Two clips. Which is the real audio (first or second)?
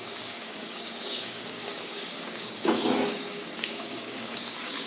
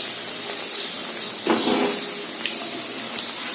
second